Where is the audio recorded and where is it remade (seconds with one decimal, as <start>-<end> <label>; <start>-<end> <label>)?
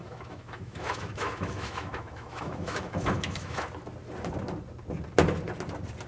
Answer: 0.0-3.7 remade; 3.7-6.1 recorded